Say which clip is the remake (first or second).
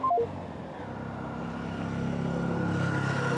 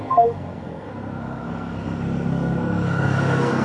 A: second